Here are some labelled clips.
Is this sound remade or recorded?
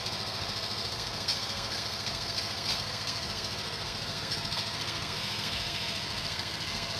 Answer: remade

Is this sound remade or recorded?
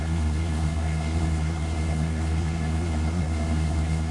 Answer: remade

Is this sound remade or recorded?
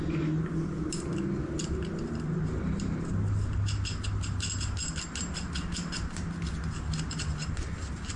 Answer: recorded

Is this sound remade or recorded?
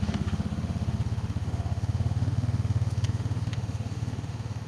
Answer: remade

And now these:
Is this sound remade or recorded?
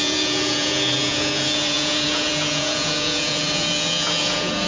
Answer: remade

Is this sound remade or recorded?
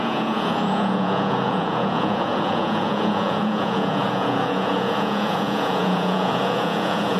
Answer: remade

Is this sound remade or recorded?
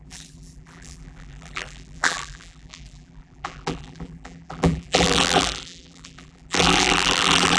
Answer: remade